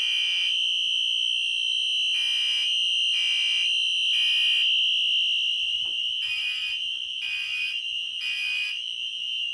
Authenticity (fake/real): real